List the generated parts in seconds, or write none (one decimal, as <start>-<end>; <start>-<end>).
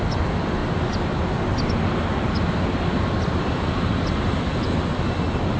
none